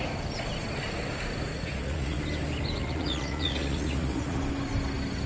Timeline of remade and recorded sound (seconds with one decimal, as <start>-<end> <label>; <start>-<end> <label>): 0.0-1.5 recorded; 1.5-2.2 remade; 2.2-2.8 recorded; 2.8-4.4 remade; 4.4-5.3 recorded